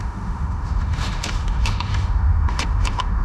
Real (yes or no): no